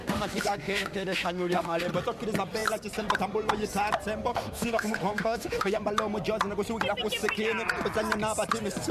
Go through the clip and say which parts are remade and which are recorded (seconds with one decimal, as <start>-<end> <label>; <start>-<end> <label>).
0.0-1.8 remade; 1.8-4.3 recorded; 4.3-5.8 remade; 5.8-8.9 recorded